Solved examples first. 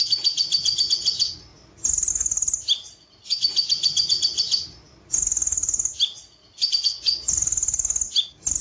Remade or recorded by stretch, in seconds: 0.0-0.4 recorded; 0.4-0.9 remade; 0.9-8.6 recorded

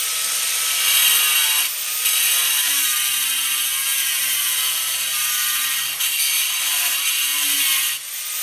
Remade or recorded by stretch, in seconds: 0.0-8.4 recorded

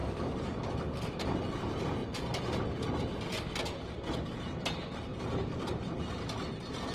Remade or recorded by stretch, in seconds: 0.0-0.8 remade; 0.8-5.1 recorded; 5.1-6.1 remade; 6.1-6.9 recorded

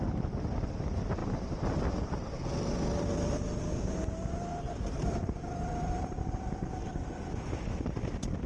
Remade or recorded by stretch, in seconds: 0.0-6.8 remade; 6.8-7.3 recorded; 7.3-8.5 remade

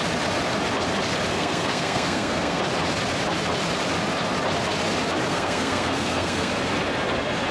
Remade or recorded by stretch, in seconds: 0.0-1.3 recorded; 1.3-2.6 remade; 2.6-5.3 recorded; 5.3-6.5 remade; 6.5-7.5 recorded

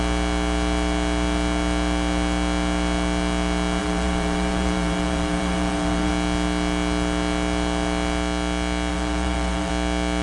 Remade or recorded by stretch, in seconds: 0.0-3.8 recorded; 3.8-6.1 remade; 6.1-8.9 recorded; 8.9-9.7 remade; 9.7-10.2 recorded